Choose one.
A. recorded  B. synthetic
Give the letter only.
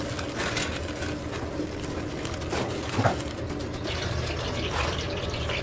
A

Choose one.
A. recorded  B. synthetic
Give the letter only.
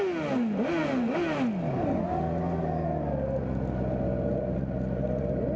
A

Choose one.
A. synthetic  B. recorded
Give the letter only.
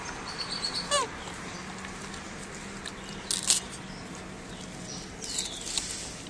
B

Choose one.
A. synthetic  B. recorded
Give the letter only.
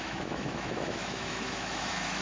A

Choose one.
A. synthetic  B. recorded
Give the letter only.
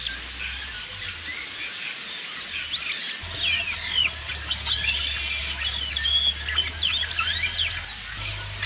B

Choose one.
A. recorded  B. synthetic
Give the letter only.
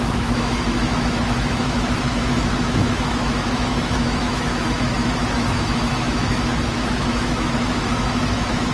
B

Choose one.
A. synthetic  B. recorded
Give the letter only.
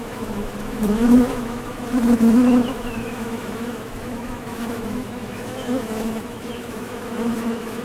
A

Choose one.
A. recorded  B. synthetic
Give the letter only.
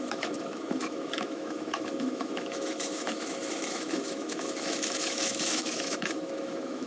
B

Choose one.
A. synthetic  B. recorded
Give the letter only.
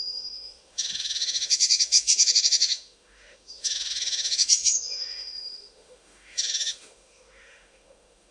A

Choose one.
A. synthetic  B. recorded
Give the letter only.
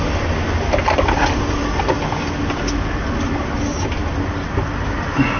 B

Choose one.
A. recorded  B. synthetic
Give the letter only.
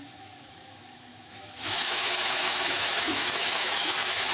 B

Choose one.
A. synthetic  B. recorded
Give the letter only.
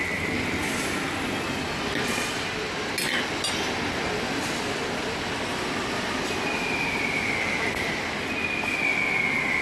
B